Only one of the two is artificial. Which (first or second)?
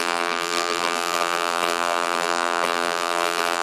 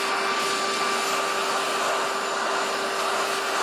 first